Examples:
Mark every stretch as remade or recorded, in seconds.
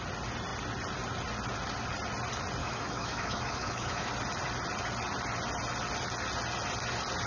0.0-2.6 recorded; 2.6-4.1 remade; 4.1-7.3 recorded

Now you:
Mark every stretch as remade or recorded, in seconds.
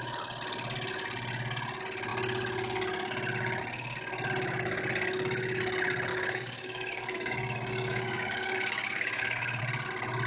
0.0-6.1 recorded; 6.1-9.6 remade; 9.6-10.3 recorded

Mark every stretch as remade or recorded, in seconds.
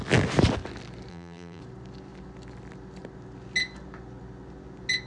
0.0-1.1 recorded; 1.1-1.6 remade; 1.6-5.1 recorded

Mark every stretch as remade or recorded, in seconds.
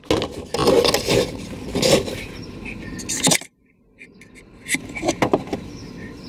0.0-6.3 recorded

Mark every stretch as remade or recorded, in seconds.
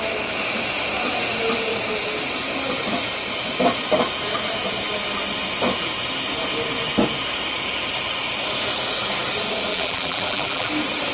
0.0-9.7 recorded; 9.7-10.7 remade; 10.7-11.1 recorded